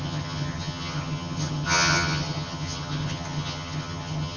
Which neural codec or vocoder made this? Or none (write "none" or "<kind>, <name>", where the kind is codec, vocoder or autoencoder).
vocoder, HiFi-GAN